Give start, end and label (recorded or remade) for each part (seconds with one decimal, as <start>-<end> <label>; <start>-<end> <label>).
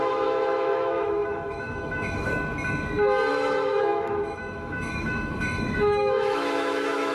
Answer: 0.0-2.3 remade; 2.3-3.3 recorded; 3.3-7.1 remade